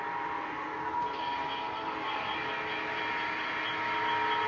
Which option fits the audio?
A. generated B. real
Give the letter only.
B